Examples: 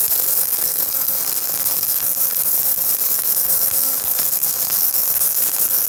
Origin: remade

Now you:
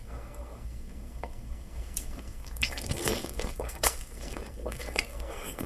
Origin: remade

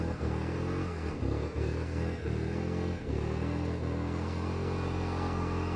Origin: remade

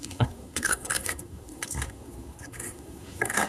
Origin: remade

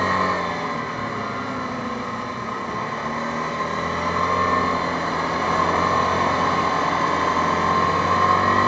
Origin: recorded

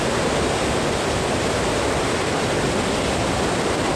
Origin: recorded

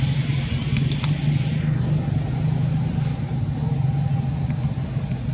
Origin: recorded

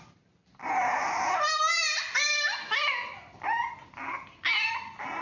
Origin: recorded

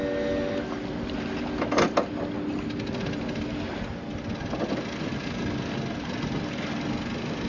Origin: recorded